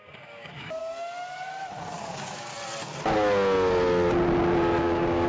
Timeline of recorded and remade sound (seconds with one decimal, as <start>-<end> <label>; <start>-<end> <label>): 0.0-0.8 remade; 0.8-2.0 recorded; 2.0-2.5 remade; 2.5-4.8 recorded; 4.8-5.3 remade